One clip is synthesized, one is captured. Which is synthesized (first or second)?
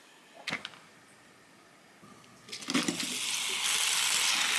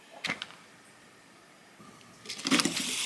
second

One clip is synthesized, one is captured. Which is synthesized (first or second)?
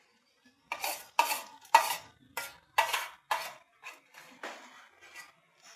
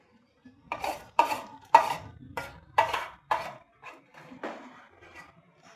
second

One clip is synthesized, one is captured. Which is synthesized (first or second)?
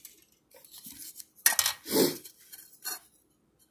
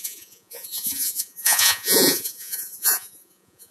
second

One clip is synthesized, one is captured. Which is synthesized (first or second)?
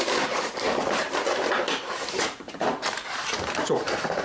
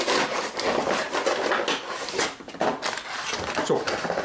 first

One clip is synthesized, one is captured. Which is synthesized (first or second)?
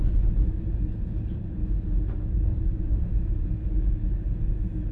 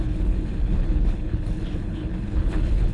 second